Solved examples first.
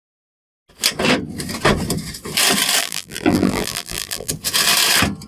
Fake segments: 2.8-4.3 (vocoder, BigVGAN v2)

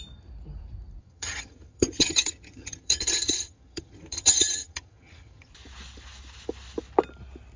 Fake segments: 1.0-5.5 (vocoder, HiFi-GAN)

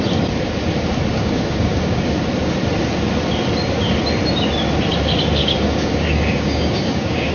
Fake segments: 1.2-2.1 (codec, DAC); 5.4-7.3

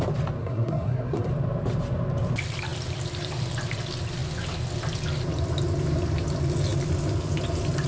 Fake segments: 0.4-1.3 (codec, SNAC)